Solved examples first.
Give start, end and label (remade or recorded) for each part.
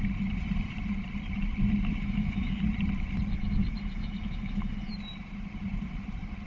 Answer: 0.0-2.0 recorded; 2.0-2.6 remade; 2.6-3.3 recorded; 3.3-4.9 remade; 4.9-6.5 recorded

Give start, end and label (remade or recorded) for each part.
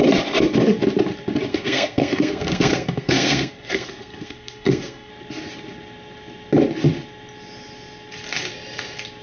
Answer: 0.0-1.5 recorded; 1.5-5.1 remade; 5.1-9.2 recorded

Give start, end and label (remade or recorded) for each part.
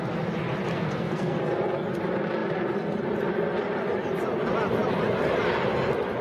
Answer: 0.0-0.7 recorded; 0.7-1.4 remade; 1.4-6.2 recorded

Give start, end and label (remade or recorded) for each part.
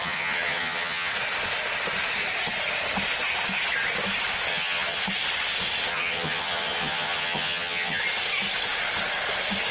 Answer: 0.0-1.1 remade; 1.1-4.5 recorded; 4.5-5.0 remade; 5.0-5.9 recorded; 5.9-8.0 remade; 8.0-9.7 recorded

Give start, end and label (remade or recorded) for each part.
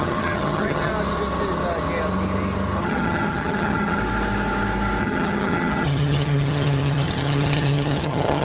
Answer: 0.0-0.9 remade; 0.9-2.8 recorded; 2.8-4.0 remade; 4.0-5.0 recorded; 5.0-8.4 remade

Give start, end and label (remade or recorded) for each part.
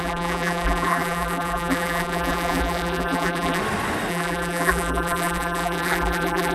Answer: 0.0-3.6 remade; 3.6-4.1 recorded; 4.1-6.5 remade